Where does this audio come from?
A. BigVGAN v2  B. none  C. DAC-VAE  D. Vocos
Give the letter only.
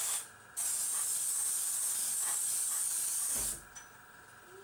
B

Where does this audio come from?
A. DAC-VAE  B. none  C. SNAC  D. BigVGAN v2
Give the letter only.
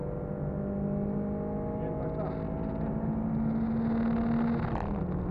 B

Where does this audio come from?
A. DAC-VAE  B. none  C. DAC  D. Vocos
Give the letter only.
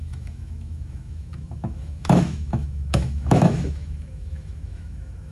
A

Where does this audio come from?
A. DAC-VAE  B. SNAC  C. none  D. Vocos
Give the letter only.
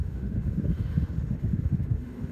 A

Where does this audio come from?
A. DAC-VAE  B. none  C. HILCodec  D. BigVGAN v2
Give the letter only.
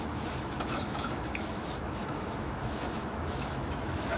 A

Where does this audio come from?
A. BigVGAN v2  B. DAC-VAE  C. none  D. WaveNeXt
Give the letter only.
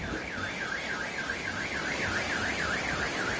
C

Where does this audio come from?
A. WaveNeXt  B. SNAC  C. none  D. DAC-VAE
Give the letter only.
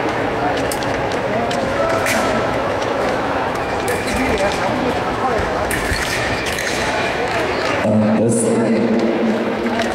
D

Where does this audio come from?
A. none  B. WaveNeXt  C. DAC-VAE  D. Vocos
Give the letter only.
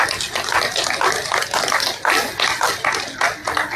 A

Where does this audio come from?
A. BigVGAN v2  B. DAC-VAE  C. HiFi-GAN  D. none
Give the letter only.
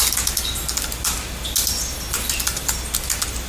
D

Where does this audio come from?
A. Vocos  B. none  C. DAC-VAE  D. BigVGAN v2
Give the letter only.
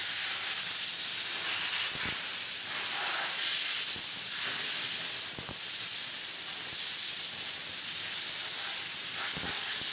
B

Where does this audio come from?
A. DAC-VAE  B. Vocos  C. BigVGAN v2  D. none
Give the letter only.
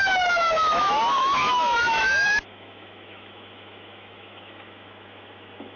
A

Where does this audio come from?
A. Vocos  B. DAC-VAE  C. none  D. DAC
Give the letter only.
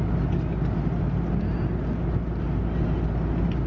C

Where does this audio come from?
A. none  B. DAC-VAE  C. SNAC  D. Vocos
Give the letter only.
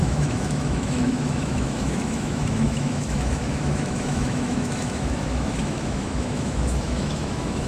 B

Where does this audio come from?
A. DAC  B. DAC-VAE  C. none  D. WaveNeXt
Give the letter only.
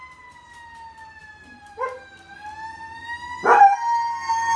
C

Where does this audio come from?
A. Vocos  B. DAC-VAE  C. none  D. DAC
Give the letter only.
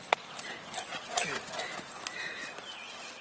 C